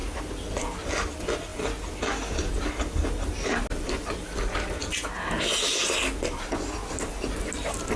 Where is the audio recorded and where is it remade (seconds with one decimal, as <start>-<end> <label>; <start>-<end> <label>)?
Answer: 0.0-8.0 recorded